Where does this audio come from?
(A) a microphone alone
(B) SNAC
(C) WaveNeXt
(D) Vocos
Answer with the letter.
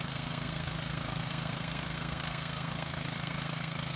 B